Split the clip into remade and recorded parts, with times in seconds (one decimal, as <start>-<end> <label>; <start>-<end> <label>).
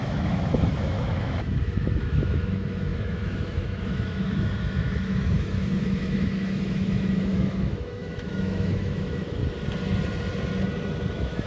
0.0-9.4 remade; 9.4-11.1 recorded; 11.1-11.5 remade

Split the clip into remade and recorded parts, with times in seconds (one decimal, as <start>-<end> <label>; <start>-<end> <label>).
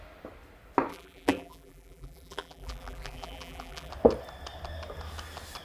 0.0-0.9 recorded; 0.9-3.9 remade; 3.9-5.6 recorded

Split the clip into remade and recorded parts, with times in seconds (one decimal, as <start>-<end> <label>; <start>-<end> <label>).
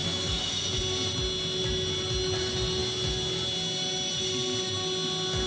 0.0-0.8 remade; 0.8-5.5 recorded